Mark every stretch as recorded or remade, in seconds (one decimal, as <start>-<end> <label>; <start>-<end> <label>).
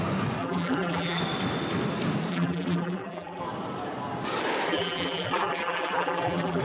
0.0-0.4 recorded; 0.4-1.2 remade; 1.2-2.3 recorded; 2.3-3.4 remade; 3.4-4.7 recorded; 4.7-6.6 remade